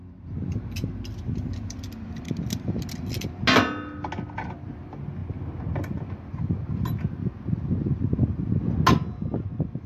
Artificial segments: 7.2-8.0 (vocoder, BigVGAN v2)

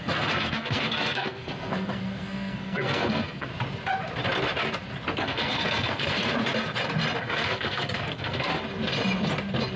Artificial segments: 0.0-3.5 (codec, SNAC); 5.2-6.2; 7.2-8.5

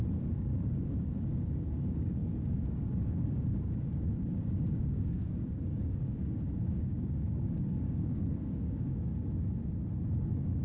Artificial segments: 0.0-9.1 (codec, DAC); 10.1-10.6

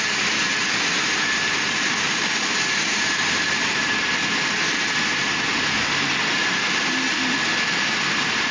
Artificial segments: 0.0-8.5 (vocoder, BigVGAN v2)